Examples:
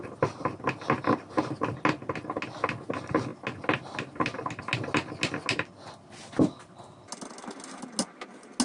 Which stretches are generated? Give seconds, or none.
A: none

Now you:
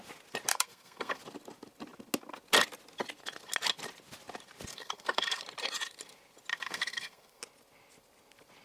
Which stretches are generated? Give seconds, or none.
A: 0.5-1.2 (codec, SNAC); 4.7-5.4; 6.5-7.4